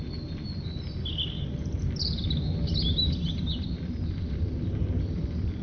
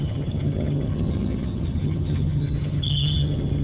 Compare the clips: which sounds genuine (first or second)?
first